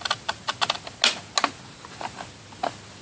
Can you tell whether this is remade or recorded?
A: recorded